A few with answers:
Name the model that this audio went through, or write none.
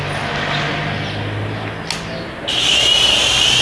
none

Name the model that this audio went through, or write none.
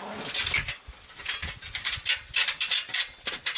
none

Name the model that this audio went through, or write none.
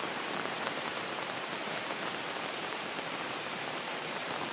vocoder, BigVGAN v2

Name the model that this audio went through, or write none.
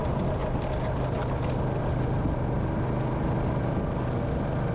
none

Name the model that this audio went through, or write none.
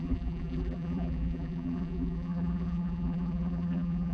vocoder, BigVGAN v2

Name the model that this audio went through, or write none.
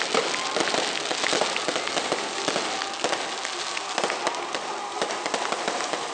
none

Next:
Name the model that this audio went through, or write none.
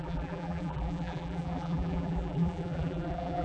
vocoder, BigVGAN v2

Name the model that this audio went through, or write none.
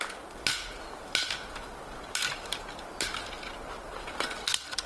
none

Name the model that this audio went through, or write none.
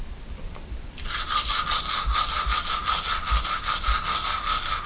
vocoder, BigVGAN v2